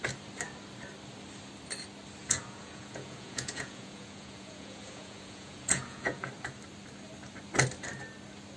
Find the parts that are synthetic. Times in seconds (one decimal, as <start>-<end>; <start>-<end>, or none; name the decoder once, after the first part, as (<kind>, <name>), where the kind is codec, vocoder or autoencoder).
2.2-6.3 (vocoder, Vocos)